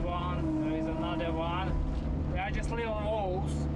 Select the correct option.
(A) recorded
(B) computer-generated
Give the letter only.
A